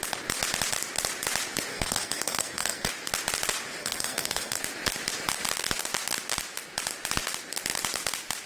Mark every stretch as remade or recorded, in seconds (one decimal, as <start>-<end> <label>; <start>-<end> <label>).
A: 0.0-1.7 recorded; 1.7-2.9 remade; 2.9-3.8 recorded; 3.8-4.6 remade; 4.6-8.5 recorded